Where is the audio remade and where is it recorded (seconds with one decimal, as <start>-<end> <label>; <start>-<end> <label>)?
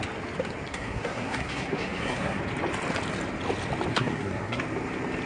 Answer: 0.0-0.7 recorded; 0.7-2.4 remade; 2.4-3.9 recorded; 3.9-4.6 remade; 4.6-5.3 recorded